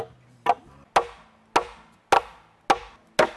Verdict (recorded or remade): recorded